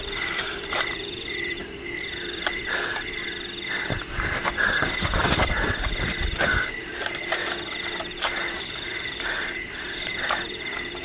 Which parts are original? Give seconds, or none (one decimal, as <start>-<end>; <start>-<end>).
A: 1.6-2.2; 3.2-5.5; 7.4-8.0